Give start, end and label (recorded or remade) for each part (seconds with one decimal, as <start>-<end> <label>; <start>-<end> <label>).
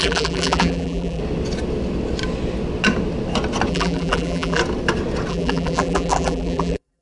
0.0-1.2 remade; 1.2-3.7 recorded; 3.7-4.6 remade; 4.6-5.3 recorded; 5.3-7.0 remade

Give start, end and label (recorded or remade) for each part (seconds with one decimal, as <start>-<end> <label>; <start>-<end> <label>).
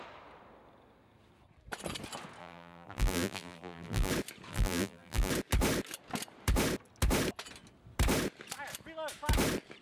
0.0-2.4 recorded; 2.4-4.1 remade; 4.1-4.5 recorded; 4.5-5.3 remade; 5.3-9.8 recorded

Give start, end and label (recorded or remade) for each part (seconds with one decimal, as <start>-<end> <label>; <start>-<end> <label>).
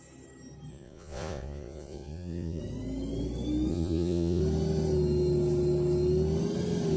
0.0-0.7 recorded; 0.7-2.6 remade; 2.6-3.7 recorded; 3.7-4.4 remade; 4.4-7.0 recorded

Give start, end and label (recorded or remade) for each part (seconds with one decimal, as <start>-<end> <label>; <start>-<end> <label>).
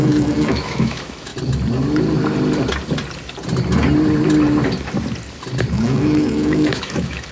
0.0-1.3 remade; 1.3-5.7 recorded; 5.7-7.3 remade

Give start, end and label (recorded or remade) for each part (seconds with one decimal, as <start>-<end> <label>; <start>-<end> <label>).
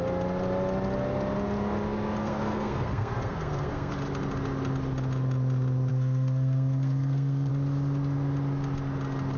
0.0-2.2 recorded; 2.2-3.9 remade; 3.9-5.9 recorded; 5.9-7.5 remade; 7.5-9.4 recorded